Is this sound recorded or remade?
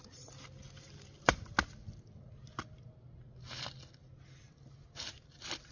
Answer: recorded